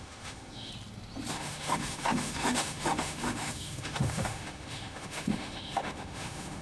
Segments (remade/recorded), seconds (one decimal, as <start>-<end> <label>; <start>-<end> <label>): 0.0-0.7 remade; 0.7-1.3 recorded; 1.3-6.6 remade